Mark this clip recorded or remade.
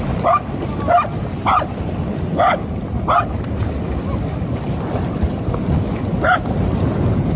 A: recorded